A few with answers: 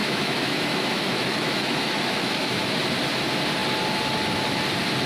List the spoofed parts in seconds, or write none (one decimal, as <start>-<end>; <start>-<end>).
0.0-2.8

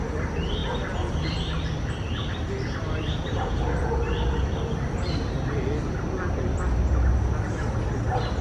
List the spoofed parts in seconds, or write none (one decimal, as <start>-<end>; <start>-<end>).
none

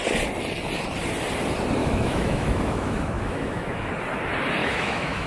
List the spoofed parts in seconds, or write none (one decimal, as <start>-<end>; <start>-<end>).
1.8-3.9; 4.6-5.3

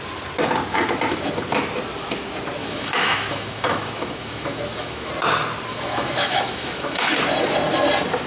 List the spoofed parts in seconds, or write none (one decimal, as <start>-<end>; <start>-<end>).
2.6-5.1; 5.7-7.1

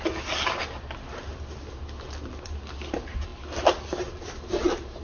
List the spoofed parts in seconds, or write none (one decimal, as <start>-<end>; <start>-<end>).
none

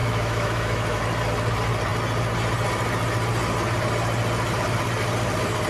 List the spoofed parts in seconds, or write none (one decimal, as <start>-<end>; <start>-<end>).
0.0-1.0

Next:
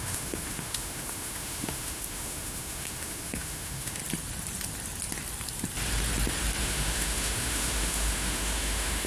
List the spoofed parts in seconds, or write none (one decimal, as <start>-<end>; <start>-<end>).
0.0-4.0; 6.6-9.1

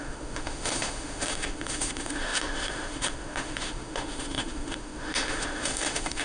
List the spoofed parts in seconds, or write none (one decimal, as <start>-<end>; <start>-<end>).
0.0-6.2